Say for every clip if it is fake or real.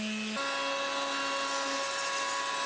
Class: real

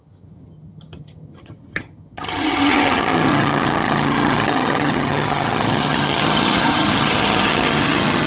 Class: fake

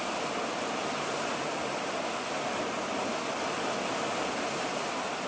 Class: real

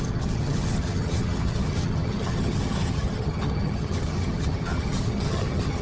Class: fake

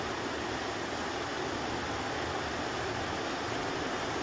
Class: real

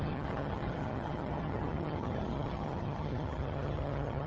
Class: fake